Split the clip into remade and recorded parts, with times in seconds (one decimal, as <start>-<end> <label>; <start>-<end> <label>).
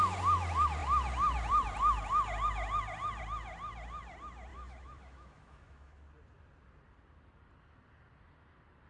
0.0-4.5 recorded; 4.5-6.0 remade; 6.0-8.9 recorded